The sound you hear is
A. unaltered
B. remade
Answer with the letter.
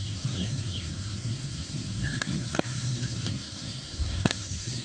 B